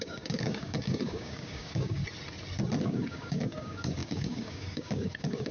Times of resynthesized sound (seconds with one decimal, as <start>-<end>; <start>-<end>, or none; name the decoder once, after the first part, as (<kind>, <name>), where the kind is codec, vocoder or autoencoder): 0.0-2.0 (codec, DAC); 2.8-5.5